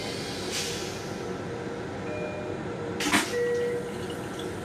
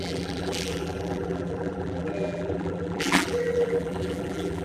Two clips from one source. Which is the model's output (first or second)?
second